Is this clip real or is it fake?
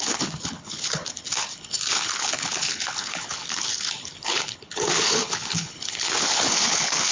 fake